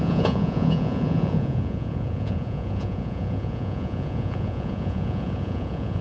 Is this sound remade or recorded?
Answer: remade